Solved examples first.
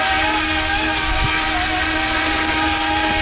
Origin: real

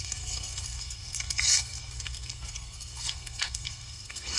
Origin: fake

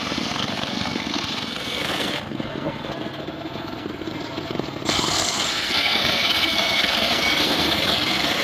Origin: fake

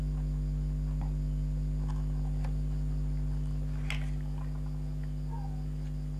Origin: real